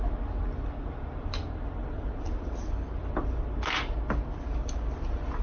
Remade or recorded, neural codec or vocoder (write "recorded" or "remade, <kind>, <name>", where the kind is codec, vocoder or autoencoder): recorded